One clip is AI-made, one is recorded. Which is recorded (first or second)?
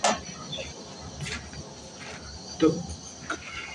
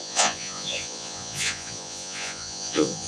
first